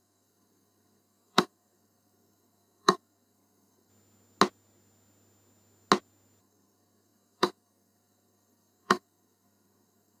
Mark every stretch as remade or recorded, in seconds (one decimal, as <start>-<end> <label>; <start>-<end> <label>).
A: 0.0-3.9 remade; 3.9-6.4 recorded; 6.4-10.2 remade